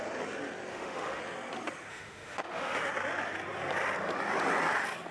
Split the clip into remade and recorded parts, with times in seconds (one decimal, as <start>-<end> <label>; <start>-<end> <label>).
0.0-0.7 recorded; 0.7-1.2 remade; 1.2-1.9 recorded; 1.9-2.9 remade; 2.9-5.1 recorded